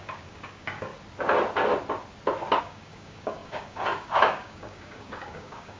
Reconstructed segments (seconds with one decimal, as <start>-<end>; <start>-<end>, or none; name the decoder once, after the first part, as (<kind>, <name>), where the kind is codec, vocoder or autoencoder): 0.0-0.9 (codec, DAC); 2.6-5.8